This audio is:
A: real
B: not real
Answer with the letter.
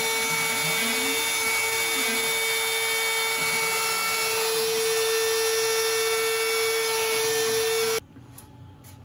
A